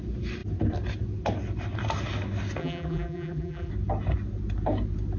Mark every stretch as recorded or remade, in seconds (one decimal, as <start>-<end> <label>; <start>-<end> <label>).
0.0-2.6 recorded; 2.6-3.7 remade; 3.7-5.2 recorded